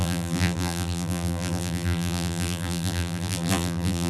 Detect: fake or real fake